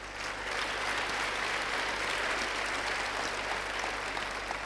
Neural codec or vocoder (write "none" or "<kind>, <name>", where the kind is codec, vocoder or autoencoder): none